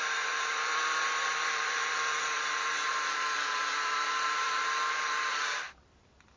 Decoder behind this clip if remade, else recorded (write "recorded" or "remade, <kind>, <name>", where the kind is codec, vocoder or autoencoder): remade, vocoder, BigVGAN v2